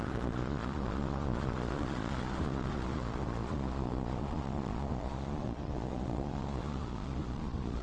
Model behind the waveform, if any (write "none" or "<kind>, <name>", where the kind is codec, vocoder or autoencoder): vocoder, Vocos